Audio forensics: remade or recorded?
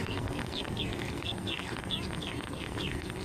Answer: remade